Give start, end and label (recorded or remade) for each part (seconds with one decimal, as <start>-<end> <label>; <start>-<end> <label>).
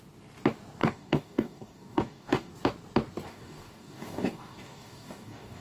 0.0-0.8 recorded; 0.8-2.5 remade; 2.5-3.3 recorded; 3.3-5.6 remade